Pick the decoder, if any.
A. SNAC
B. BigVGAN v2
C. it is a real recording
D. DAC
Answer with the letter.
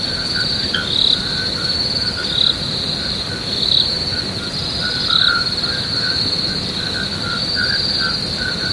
C